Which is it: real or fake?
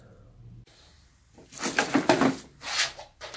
real